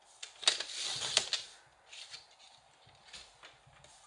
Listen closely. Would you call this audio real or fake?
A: real